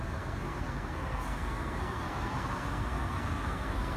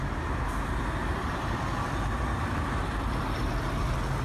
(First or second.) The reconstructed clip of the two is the first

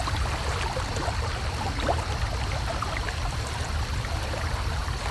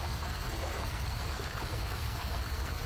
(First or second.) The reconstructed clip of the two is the second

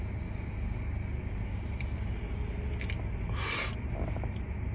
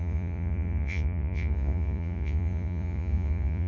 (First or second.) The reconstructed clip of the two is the second